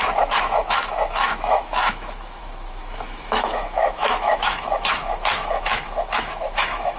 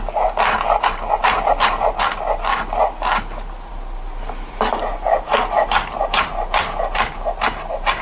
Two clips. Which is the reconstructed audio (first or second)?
first